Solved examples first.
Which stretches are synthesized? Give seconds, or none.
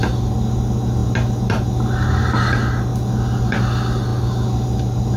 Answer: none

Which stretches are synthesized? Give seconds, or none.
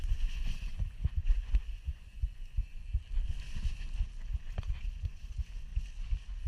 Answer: 0.0-2.8 (vocoder, Vocos); 4.2-5.7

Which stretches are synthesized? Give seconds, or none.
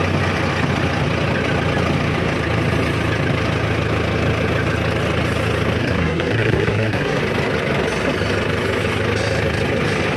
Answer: 5.8-7.2 (codec, SNAC)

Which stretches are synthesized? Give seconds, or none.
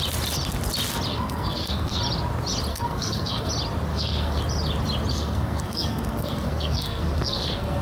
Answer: 1.1-2.0 (codec, SNAC); 2.7-3.5; 3.9-4.4; 5.1-7.8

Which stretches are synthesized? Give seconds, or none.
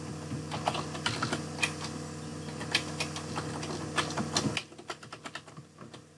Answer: none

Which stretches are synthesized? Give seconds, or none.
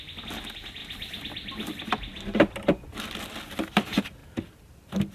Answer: 2.1-3.7 (vocoder, BigVGAN v2)